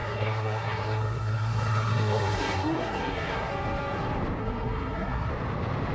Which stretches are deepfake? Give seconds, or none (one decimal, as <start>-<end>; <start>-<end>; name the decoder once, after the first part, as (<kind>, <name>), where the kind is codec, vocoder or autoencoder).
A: 0.0-3.5 (codec, SNAC); 4.4-5.3